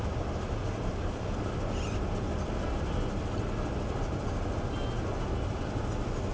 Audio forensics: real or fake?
real